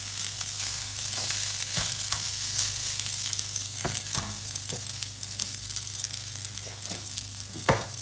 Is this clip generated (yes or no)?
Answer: yes